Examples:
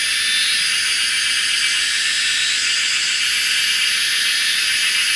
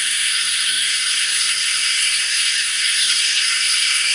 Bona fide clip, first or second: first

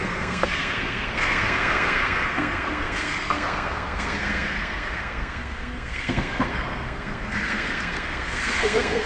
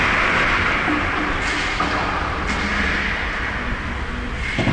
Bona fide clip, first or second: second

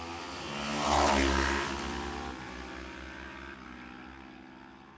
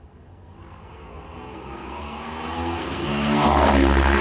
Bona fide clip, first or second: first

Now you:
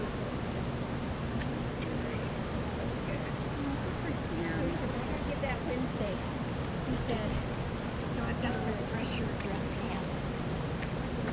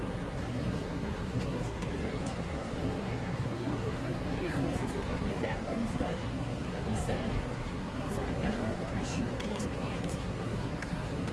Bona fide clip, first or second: first